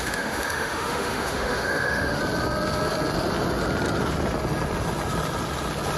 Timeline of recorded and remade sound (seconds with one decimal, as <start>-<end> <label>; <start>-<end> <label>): 0.0-2.2 remade; 2.2-6.0 recorded